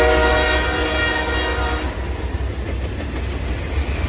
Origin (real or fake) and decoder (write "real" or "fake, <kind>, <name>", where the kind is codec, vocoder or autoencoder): real